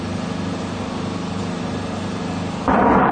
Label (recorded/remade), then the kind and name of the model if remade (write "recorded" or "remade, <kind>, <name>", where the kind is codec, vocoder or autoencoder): recorded